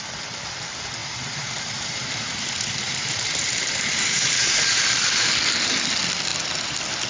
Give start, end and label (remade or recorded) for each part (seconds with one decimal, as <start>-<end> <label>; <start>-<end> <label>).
0.0-1.0 recorded; 1.0-5.3 remade; 5.3-7.1 recorded

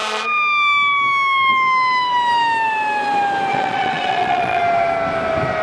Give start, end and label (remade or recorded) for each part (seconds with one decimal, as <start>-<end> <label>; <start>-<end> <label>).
0.0-3.5 recorded; 3.5-4.6 remade; 4.6-5.6 recorded

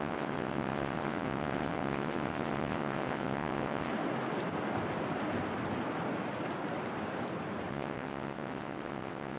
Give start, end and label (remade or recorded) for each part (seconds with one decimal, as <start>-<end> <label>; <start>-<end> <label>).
0.0-3.9 remade; 3.9-7.7 recorded; 7.7-9.4 remade

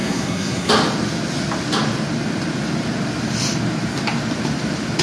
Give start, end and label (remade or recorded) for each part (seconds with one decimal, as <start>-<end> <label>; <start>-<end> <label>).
0.0-0.7 remade; 0.7-5.0 recorded